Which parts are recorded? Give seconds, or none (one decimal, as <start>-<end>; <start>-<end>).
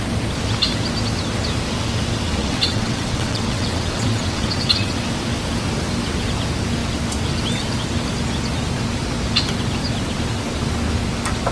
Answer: 0.0-2.4; 4.9-11.5